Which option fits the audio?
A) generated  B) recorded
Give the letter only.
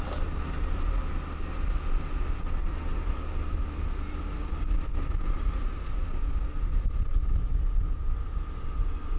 B